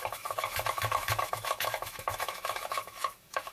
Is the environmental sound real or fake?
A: fake